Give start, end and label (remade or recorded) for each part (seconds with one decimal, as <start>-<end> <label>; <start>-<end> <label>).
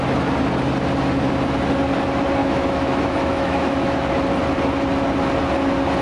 0.0-2.4 recorded; 2.4-4.1 remade; 4.1-6.0 recorded